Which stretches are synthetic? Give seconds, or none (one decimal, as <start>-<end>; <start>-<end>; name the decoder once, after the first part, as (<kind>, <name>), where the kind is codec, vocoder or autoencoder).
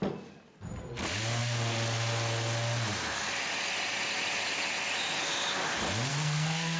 6.1-6.8 (codec, SNAC)